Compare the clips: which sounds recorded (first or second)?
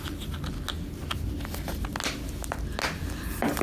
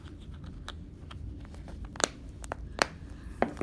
first